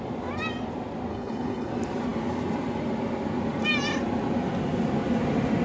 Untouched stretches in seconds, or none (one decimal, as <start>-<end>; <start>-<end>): 0.0-1.1; 1.7-5.6